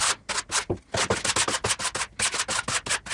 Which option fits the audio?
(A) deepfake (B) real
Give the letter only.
B